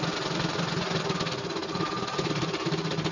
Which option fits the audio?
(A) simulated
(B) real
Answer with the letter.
B